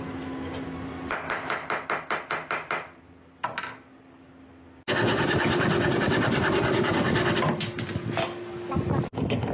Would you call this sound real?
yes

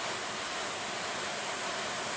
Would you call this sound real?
yes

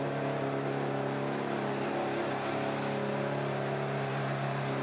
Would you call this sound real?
yes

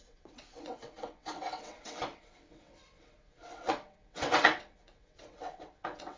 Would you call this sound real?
no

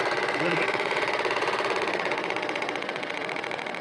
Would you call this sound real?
no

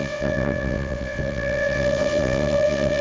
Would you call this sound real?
no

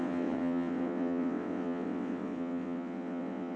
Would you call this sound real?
no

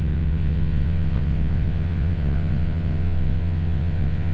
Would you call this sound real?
no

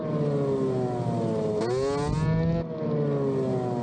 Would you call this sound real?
yes